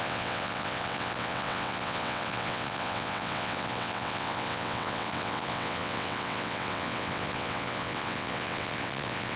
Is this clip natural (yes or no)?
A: no